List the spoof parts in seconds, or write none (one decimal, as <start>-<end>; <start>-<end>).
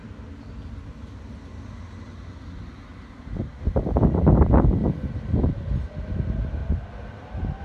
2.9-3.5